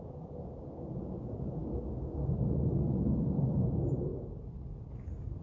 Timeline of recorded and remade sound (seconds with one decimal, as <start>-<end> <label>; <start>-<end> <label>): 0.0-5.4 recorded